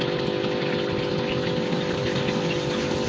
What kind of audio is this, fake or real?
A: real